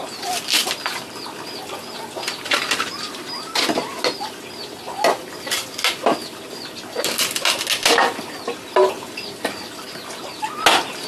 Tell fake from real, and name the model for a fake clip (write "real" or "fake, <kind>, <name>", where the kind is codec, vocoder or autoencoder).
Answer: real